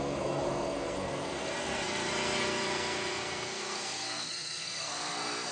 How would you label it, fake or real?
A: fake